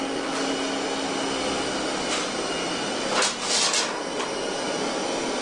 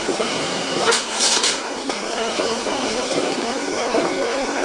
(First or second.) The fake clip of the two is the second